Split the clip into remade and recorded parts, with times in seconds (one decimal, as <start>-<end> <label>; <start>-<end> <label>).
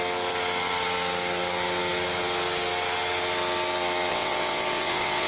0.0-4.1 recorded; 4.1-5.3 remade